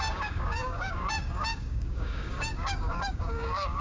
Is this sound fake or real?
fake